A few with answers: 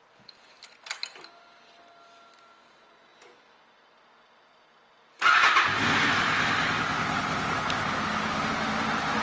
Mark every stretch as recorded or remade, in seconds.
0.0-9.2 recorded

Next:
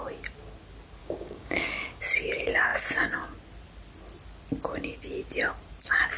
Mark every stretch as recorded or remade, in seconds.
0.0-1.0 recorded; 1.0-2.0 remade; 2.0-6.2 recorded

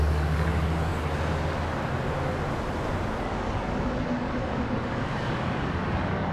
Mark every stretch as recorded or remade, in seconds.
0.0-0.9 remade; 0.9-3.2 recorded; 3.2-6.3 remade

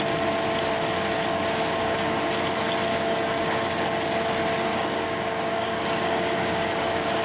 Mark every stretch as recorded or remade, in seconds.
0.0-2.9 recorded; 2.9-3.9 remade; 3.9-4.7 recorded; 4.7-7.2 remade

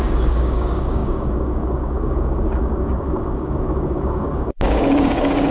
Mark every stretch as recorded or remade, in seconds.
0.0-5.5 remade

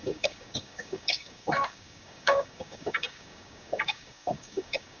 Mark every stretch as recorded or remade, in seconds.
0.0-5.0 remade